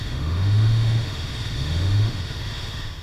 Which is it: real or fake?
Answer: fake